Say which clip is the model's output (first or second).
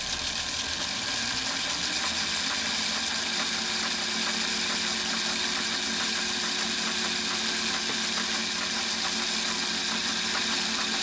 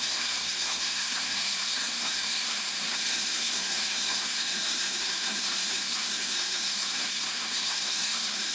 second